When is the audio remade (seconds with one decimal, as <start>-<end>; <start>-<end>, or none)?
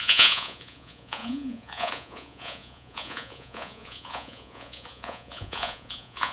0.0-6.3